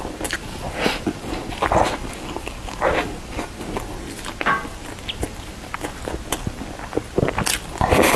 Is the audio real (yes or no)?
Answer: yes